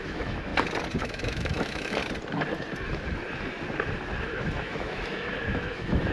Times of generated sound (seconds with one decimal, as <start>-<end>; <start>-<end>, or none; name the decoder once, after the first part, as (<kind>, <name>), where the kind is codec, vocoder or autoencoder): 0.0-0.5 (autoencoder, DAC-VAE); 1.0-2.0; 4.2-6.1